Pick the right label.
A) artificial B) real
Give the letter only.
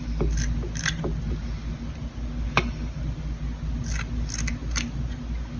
B